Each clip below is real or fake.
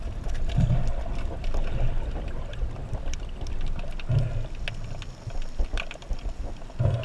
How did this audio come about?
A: real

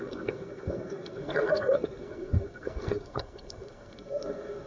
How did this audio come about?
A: fake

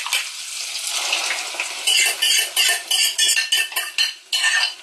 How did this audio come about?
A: real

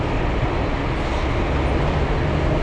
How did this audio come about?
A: real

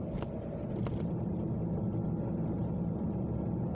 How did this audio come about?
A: real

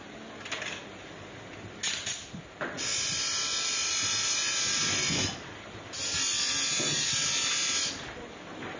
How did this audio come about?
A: real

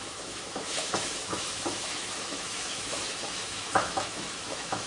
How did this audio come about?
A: fake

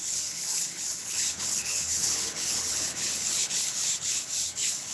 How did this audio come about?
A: fake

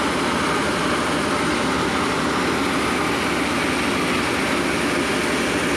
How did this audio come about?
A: real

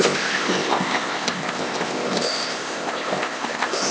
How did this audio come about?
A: fake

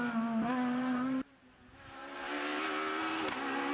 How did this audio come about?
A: real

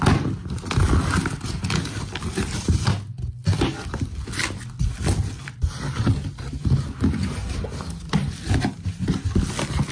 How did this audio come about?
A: real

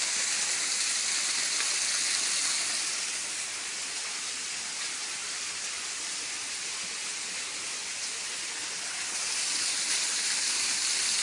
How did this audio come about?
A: real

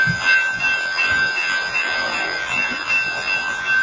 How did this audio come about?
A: fake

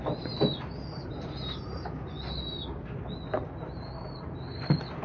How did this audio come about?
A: real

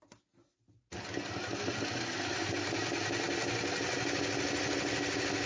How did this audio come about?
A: real